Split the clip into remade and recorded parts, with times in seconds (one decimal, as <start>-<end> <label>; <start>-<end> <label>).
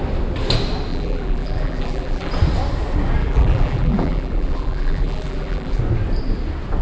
0.0-0.9 recorded; 0.9-2.3 remade; 2.3-3.2 recorded; 3.2-5.8 remade; 5.8-6.8 recorded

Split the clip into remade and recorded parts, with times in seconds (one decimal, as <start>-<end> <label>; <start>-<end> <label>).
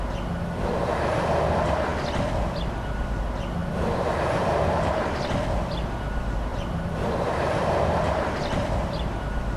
0.0-3.6 recorded; 3.6-5.3 remade; 5.3-6.5 recorded; 6.5-9.2 remade; 9.2-9.6 recorded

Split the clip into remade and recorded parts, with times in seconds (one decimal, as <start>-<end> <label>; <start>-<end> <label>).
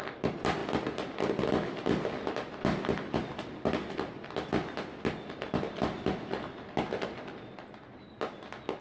0.0-8.8 recorded